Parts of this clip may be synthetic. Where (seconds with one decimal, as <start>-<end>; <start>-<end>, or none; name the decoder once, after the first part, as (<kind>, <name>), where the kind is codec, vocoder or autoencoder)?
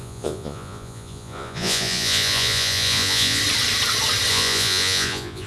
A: 0.0-3.4 (vocoder, Vocos); 4.3-5.5